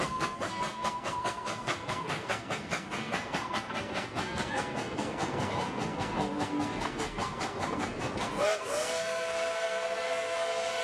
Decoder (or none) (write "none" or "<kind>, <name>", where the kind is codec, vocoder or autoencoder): codec, SNAC